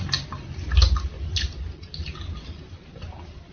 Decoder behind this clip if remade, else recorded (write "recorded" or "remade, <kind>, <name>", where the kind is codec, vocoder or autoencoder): recorded